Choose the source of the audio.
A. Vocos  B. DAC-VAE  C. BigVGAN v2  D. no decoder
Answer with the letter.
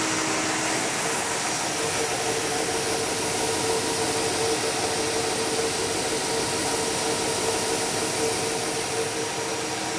D